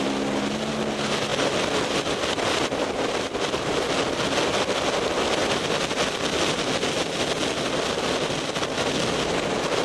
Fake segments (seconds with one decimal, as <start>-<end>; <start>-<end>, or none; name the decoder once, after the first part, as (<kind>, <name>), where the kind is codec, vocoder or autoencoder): none